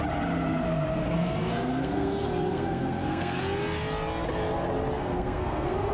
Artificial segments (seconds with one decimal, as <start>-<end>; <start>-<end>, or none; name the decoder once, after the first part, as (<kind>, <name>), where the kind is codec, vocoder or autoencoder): 1.0-3.4 (codec, SNAC); 4.9-5.9